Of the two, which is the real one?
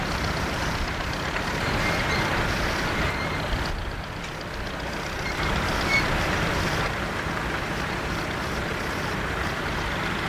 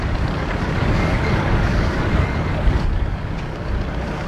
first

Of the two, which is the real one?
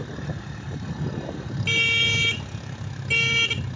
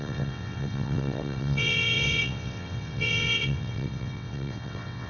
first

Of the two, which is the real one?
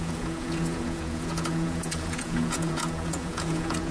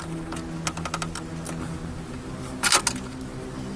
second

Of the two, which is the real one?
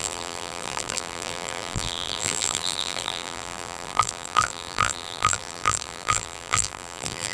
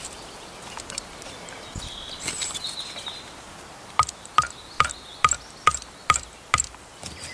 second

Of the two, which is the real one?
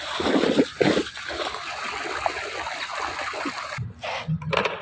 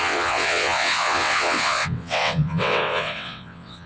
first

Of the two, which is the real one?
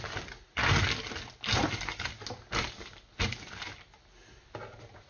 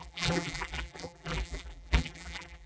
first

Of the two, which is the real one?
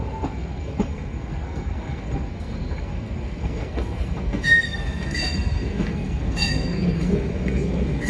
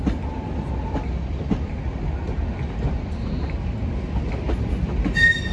second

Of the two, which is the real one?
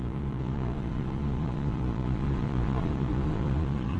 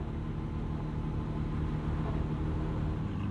second